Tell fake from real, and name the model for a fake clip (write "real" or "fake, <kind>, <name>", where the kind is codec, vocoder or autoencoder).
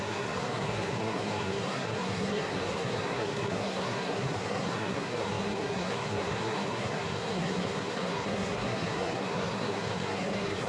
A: fake, codec, SNAC